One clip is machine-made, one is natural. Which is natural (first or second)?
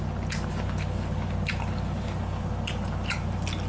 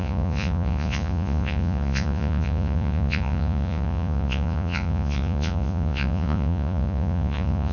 first